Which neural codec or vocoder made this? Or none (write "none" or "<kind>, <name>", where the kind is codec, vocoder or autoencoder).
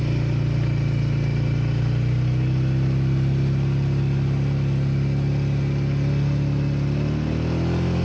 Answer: none